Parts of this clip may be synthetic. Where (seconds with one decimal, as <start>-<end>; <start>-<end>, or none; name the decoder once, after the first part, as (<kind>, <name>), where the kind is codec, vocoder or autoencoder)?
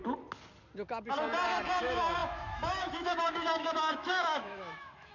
1.8-5.1 (autoencoder, DAC-VAE)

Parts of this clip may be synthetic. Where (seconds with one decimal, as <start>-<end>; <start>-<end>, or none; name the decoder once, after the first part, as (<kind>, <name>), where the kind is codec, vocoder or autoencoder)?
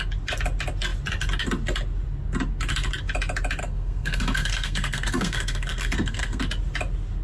3.6-6.4 (codec, SNAC)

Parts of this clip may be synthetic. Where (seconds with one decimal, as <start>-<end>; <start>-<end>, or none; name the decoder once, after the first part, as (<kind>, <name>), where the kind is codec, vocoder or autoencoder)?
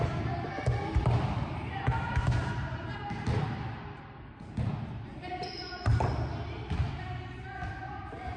none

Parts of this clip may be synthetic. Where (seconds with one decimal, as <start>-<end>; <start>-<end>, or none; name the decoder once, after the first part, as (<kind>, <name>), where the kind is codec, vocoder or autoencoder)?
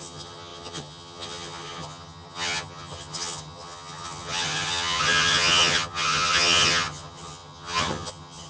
0.0-8.5 (vocoder, HiFi-GAN)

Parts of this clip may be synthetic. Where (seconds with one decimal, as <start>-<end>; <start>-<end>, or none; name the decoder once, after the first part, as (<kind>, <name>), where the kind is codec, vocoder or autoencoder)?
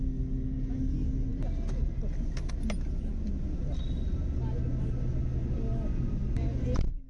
none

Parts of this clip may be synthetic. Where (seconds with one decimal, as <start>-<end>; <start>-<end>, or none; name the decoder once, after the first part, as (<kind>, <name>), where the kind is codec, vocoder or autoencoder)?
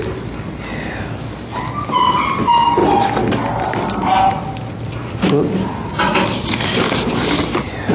none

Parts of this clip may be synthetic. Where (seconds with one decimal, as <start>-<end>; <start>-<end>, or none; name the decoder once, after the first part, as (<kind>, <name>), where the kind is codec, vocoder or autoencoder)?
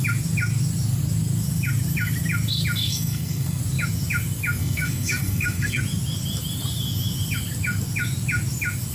2.9-3.6 (codec, SNAC); 4.6-5.8